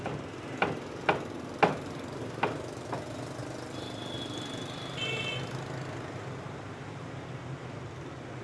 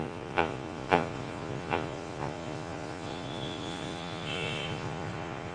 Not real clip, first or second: second